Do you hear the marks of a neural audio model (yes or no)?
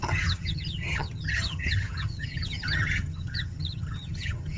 yes